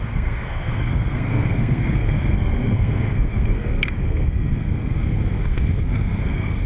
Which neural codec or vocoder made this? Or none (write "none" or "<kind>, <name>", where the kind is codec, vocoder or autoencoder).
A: codec, SNAC